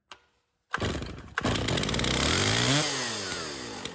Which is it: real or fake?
real